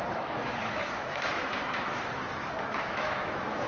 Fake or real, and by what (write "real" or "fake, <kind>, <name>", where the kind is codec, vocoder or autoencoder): fake, autoencoder, DAC-VAE